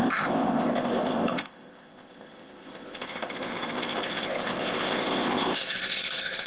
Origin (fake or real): fake